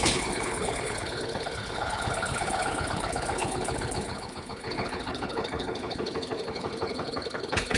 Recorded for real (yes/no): no